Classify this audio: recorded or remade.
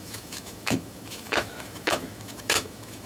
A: remade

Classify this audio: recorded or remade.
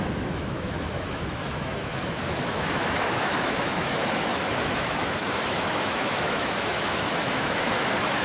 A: remade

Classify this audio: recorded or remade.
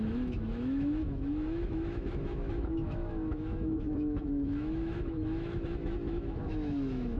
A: remade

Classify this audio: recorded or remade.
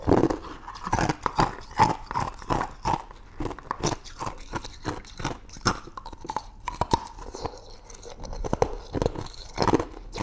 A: recorded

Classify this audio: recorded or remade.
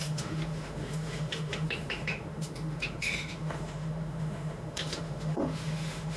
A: remade